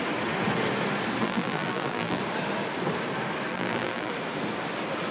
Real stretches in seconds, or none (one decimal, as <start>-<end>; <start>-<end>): 0.0-1.2; 2.2-3.5; 4.1-5.1